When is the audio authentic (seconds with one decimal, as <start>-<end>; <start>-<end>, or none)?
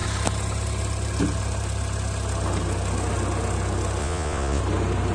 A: 0.0-4.0; 4.6-5.1